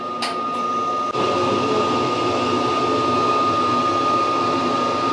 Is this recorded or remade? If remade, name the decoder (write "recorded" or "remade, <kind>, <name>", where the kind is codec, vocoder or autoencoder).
recorded